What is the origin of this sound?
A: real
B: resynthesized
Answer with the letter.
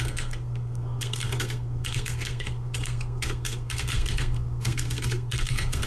B